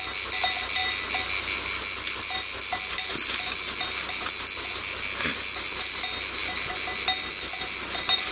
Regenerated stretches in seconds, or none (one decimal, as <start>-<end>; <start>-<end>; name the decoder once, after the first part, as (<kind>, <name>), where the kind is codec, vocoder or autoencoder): none